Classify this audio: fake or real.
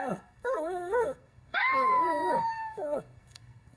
fake